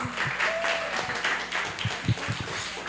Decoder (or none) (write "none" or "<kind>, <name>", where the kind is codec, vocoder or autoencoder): none